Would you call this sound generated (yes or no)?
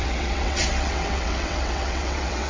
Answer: yes